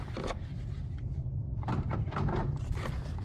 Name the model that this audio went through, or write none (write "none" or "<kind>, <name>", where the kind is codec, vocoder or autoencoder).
none